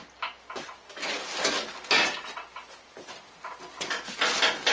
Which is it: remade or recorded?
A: recorded